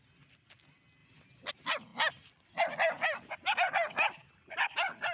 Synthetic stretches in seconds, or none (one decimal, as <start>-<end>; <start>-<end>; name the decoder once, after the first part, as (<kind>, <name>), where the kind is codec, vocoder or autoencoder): none